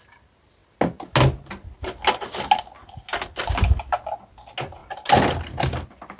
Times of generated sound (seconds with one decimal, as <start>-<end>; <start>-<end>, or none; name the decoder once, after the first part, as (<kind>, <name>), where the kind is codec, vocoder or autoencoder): none